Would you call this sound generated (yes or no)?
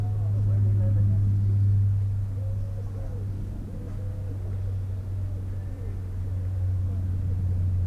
no